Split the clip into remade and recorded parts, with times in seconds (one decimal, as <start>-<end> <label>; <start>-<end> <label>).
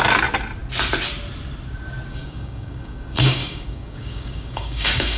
0.0-2.1 recorded; 2.1-5.2 remade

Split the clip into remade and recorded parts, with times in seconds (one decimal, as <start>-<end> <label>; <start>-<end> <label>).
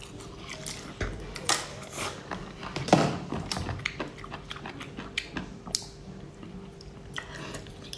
0.0-1.7 recorded; 1.7-2.6 remade; 2.6-8.0 recorded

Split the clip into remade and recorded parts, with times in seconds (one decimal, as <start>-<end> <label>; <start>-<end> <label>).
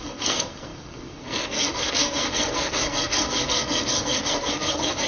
0.0-5.1 remade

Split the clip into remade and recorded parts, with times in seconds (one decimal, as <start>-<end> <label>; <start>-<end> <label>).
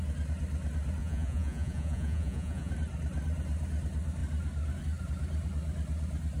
0.0-1.0 recorded; 1.0-2.7 remade; 2.7-6.4 recorded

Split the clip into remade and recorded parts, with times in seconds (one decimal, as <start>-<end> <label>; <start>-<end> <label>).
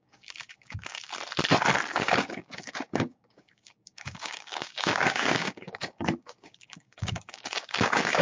0.0-1.1 remade; 1.1-1.9 recorded; 1.9-8.2 remade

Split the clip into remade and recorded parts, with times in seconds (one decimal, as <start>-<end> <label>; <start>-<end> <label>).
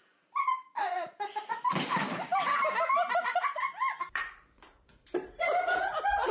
0.0-2.0 recorded; 2.0-5.8 remade; 5.8-6.3 recorded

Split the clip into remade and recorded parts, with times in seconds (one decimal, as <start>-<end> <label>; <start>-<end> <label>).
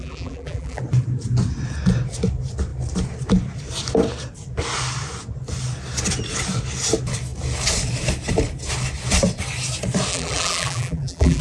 0.0-0.8 remade; 0.8-10.1 recorded; 10.1-11.4 remade